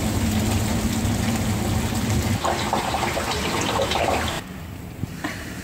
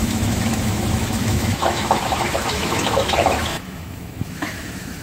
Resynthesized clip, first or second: second